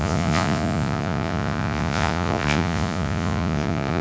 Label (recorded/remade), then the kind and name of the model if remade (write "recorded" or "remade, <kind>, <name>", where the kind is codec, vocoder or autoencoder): remade, vocoder, Vocos